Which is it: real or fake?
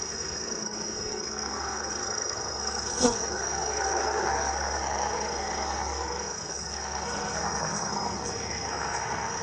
fake